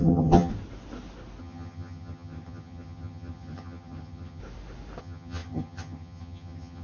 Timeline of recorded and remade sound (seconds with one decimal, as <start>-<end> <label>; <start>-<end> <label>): 0.0-0.5 remade; 0.5-1.4 recorded; 1.4-4.4 remade; 4.4-5.0 recorded; 5.0-6.8 remade